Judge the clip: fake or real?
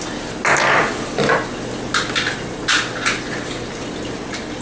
real